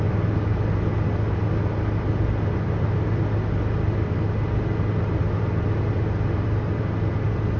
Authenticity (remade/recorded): recorded